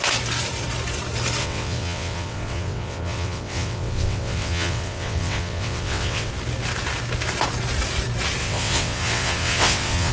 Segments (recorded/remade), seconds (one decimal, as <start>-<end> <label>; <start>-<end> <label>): 0.0-1.4 recorded; 1.4-6.3 remade; 6.3-8.4 recorded; 8.4-10.1 remade

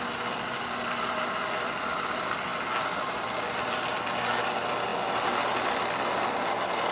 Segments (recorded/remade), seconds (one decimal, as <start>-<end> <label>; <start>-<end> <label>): 0.0-6.9 recorded

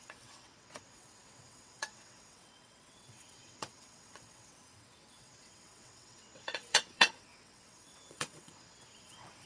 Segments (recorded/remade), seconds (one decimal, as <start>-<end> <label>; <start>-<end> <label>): 0.0-9.5 remade